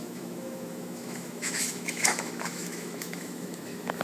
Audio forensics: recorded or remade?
remade